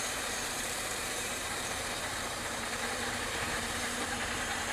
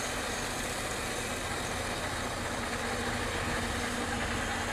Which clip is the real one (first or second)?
second